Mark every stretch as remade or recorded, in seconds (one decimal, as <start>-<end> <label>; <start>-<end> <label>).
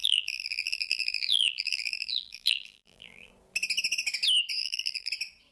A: 0.0-3.3 remade; 3.3-4.6 recorded; 4.6-5.1 remade; 5.1-5.5 recorded